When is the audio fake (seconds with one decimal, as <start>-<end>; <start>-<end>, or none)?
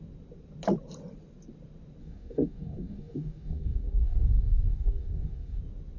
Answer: 2.0-5.6